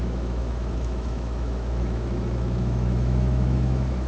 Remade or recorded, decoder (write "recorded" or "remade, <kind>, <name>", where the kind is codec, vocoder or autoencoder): remade, autoencoder, DAC-VAE